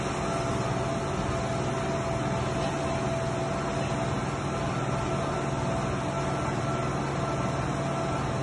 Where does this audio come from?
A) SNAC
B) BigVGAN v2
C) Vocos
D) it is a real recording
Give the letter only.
D